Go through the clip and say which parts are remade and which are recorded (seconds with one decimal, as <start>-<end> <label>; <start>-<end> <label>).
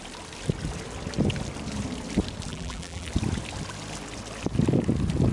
0.0-2.5 recorded; 2.5-3.1 remade; 3.1-5.3 recorded